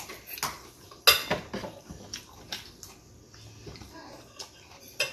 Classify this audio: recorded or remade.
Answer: recorded